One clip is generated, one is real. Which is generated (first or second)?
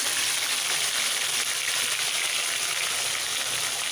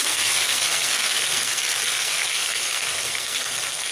second